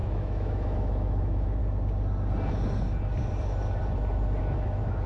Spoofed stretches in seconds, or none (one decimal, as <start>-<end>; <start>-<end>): 0.0-1.6; 4.4-5.1